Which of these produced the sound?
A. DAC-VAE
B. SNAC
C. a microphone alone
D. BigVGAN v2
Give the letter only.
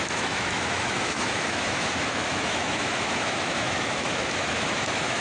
A